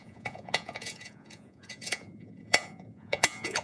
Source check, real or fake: fake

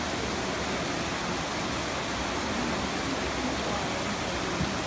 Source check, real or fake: real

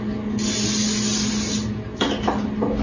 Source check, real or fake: real